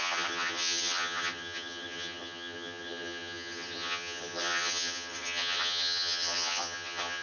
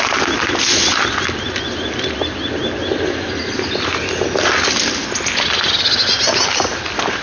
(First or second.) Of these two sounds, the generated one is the first